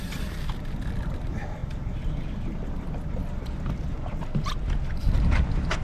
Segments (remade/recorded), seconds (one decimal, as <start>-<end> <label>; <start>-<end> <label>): 0.0-5.8 recorded